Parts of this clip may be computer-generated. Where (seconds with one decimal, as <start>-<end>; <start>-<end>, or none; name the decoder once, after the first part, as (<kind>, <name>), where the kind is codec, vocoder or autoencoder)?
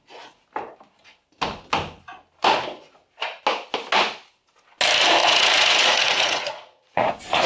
5.2-7.1 (vocoder, Vocos)